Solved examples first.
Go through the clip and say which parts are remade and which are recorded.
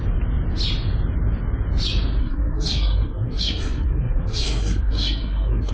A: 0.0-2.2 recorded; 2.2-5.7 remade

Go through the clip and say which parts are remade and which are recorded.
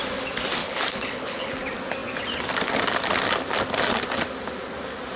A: 0.0-0.6 recorded; 0.6-1.5 remade; 1.5-5.2 recorded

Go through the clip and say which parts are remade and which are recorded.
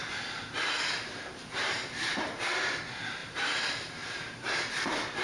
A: 0.0-2.8 remade; 2.8-3.2 recorded; 3.2-4.5 remade; 4.5-5.2 recorded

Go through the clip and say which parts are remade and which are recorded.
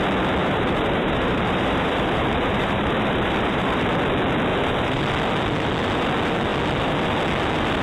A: 0.0-0.4 recorded; 0.4-3.8 remade; 3.8-4.5 recorded; 4.5-5.0 remade; 5.0-7.8 recorded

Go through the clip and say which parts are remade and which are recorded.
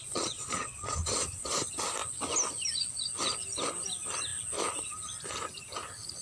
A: 0.0-1.4 remade; 1.4-6.2 recorded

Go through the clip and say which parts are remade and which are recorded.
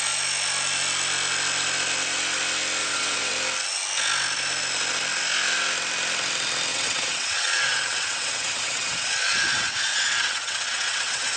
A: 0.0-2.8 recorded; 2.8-3.3 remade; 3.3-6.7 recorded; 6.7-11.4 remade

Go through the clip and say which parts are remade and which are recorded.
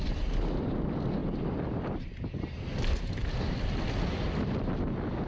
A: 0.0-5.3 recorded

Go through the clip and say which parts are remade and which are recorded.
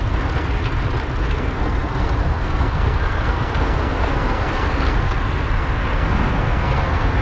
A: 0.0-0.6 remade; 0.6-1.2 recorded; 1.2-7.2 remade